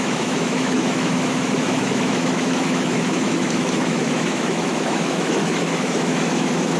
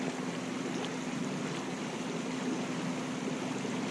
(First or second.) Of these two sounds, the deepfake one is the first